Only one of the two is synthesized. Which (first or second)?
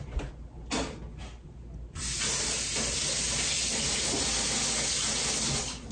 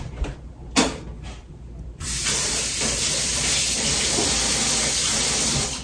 second